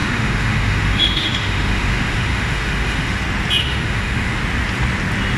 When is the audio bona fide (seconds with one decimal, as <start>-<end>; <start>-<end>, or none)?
3.2-3.6; 4.4-5.4